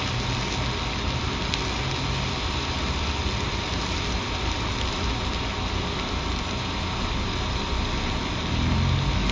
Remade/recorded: recorded